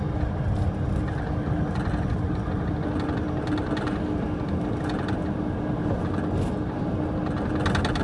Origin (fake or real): real